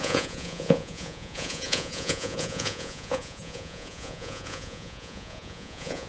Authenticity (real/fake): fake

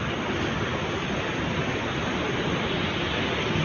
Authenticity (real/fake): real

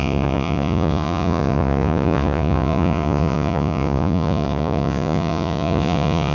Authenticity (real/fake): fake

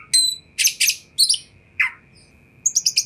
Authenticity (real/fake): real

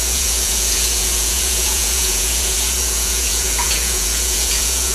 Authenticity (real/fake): fake